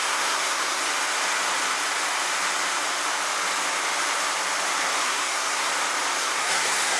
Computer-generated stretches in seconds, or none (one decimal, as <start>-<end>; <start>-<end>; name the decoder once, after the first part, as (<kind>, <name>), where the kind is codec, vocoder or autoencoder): 0.0-0.8 (codec, SNAC); 5.0-5.7; 6.2-7.0